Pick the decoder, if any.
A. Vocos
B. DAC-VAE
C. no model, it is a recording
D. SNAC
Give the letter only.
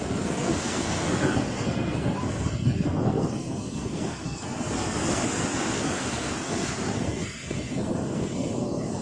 D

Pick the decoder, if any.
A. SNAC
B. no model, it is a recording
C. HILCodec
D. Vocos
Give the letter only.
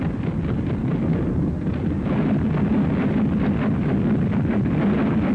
B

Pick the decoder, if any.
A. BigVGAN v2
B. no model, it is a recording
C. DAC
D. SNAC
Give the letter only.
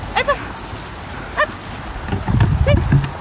B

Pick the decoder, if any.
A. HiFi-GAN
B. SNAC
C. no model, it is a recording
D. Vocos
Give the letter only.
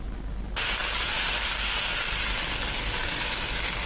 C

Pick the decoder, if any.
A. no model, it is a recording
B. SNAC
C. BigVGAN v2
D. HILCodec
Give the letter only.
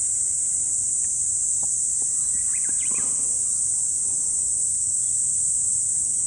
A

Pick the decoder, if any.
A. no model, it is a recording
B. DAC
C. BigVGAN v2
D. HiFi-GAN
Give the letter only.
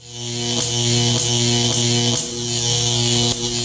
A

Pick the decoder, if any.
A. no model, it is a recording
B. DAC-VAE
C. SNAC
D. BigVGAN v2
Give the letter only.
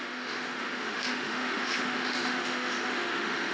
B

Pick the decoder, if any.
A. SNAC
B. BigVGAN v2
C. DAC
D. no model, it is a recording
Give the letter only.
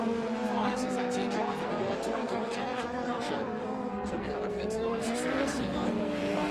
A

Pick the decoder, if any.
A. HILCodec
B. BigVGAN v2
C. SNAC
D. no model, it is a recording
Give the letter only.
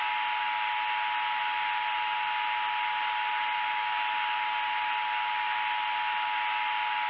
D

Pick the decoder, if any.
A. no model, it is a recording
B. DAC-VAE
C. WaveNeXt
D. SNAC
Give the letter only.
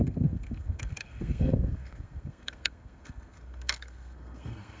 D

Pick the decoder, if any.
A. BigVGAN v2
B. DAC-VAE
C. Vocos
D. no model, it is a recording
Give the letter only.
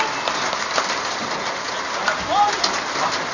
D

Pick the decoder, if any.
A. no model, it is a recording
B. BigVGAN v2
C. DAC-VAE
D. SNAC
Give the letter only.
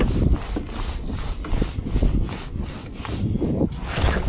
B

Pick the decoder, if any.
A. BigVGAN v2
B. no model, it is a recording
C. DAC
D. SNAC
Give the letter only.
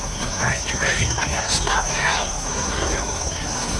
D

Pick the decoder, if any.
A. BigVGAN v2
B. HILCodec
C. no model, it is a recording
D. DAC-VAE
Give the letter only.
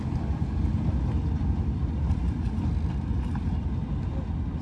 C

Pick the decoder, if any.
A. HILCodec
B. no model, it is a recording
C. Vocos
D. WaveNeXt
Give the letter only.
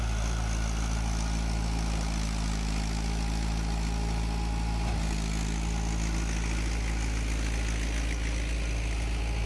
B